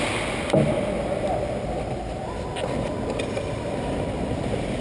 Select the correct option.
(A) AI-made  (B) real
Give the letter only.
A